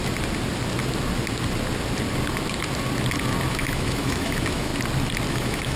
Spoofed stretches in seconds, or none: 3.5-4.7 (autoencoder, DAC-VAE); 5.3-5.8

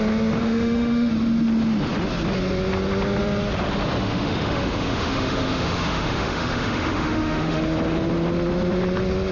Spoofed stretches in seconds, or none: 0.4-1.1 (autoencoder, DAC-VAE); 4.0-7.6

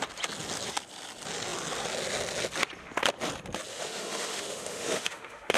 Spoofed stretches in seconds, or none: 3.7-5.6 (autoencoder, DAC-VAE)

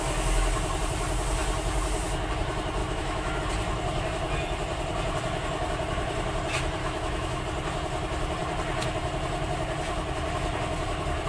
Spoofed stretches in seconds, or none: 2.8-3.4 (autoencoder, DAC-VAE); 6.8-7.4

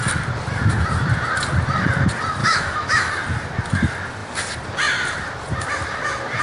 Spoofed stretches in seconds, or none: 2.4-3.1 (autoencoder, DAC-VAE)

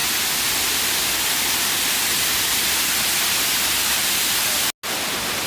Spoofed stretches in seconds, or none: none